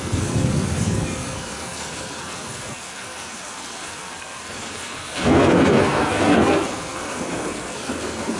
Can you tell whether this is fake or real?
fake